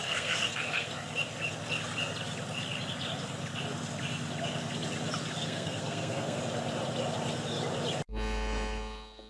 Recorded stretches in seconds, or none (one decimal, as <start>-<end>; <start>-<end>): 0.9-5.4; 6.4-9.3